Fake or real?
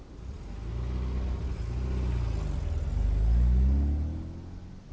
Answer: real